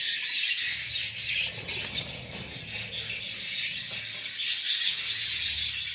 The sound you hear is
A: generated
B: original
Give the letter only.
B